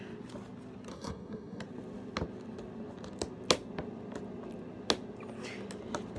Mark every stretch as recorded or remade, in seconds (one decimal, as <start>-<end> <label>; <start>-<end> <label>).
0.0-0.9 recorded; 0.9-1.6 remade; 1.6-6.2 recorded